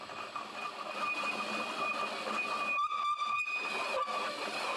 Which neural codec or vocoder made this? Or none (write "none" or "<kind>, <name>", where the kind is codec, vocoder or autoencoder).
none